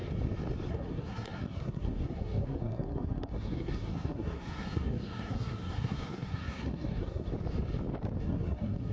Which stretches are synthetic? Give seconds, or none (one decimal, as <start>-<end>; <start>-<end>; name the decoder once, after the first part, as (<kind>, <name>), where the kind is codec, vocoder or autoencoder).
0.7-7.3 (codec, SNAC); 8.2-8.9